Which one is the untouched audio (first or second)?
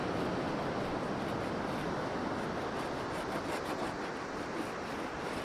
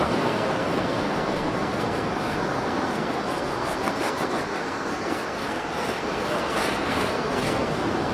first